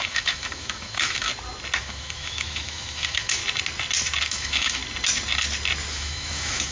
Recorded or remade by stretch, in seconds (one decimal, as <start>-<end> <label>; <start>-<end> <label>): 0.0-1.3 remade; 1.3-1.8 recorded; 1.8-3.4 remade; 3.4-4.2 recorded; 4.2-4.8 remade; 4.8-5.9 recorded; 5.9-6.7 remade